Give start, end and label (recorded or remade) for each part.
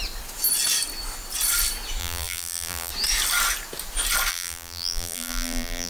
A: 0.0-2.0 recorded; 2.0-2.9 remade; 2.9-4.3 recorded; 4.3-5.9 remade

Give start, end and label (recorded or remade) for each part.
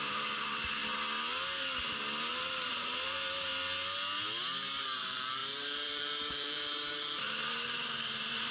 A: 0.0-0.8 remade; 0.8-2.3 recorded; 2.3-3.5 remade; 3.5-4.8 recorded; 4.8-8.5 remade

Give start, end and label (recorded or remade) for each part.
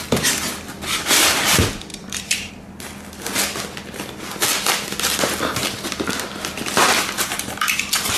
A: 0.0-1.9 recorded; 1.9-2.5 remade; 2.5-8.2 recorded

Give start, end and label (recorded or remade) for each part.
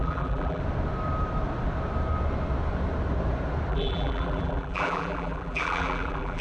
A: 0.0-0.6 remade; 0.6-3.7 recorded; 3.7-6.4 remade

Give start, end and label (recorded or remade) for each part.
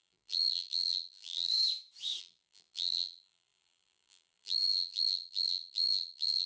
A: 0.0-1.5 remade; 1.5-2.2 recorded; 2.2-6.5 remade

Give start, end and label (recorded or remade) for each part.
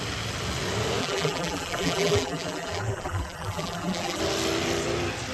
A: 0.0-1.0 recorded; 1.0-4.2 remade; 4.2-5.3 recorded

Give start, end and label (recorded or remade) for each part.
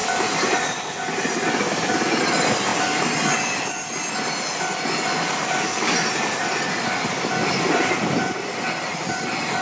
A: 0.0-2.2 recorded; 2.2-2.7 remade; 2.7-7.6 recorded; 7.6-9.6 remade